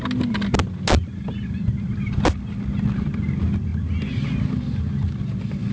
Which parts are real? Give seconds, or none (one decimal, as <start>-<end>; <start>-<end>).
0.0-5.7